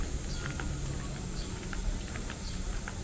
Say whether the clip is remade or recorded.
recorded